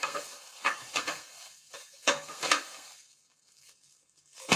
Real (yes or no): no